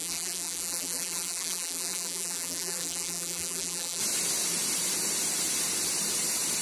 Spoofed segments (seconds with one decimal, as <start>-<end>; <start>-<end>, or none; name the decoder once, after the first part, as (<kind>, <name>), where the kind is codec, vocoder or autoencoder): 0.0-4.0 (vocoder, BigVGAN v2)